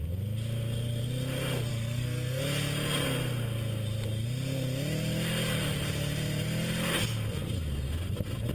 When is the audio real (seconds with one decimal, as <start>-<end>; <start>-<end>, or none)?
0.0-1.7; 2.4-8.5